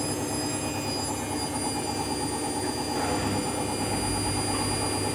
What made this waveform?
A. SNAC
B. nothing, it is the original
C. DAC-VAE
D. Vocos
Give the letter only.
B